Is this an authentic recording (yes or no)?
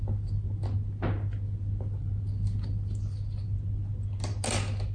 yes